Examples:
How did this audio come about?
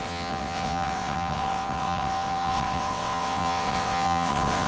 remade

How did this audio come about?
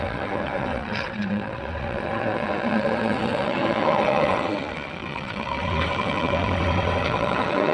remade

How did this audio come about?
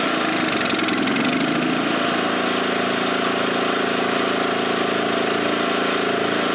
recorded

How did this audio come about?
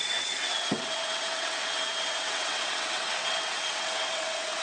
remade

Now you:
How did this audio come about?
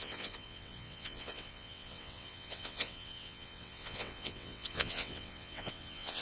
remade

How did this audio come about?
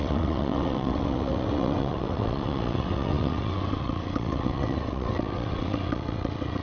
remade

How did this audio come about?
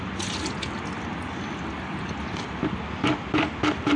recorded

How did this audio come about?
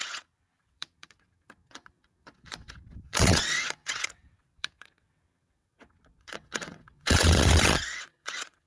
remade